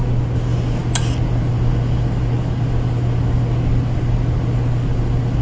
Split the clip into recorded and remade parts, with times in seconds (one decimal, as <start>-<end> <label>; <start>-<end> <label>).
0.0-5.4 recorded